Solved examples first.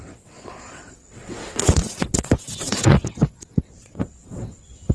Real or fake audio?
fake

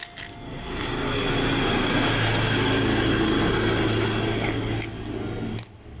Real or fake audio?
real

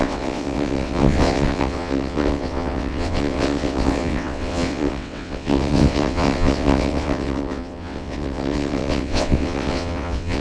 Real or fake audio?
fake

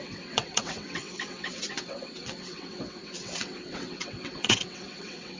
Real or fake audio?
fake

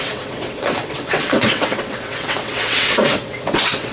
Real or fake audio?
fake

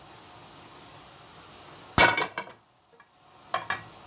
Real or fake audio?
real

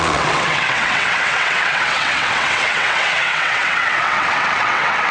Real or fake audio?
fake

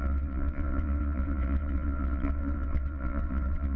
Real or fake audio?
fake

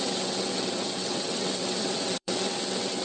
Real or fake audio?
fake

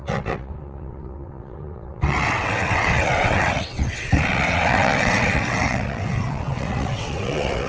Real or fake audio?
fake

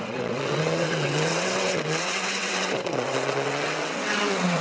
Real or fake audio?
fake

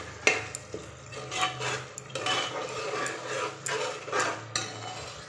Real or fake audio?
real